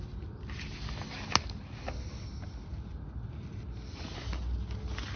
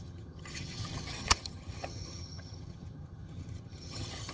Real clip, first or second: first